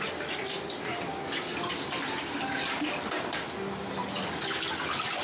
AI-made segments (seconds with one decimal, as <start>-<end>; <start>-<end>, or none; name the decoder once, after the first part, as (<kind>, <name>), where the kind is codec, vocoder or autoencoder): none